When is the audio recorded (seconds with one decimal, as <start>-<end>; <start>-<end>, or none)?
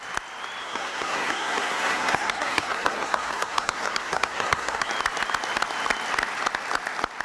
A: 0.0-0.6; 4.9-7.2